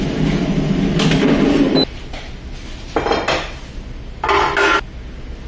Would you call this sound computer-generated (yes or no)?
no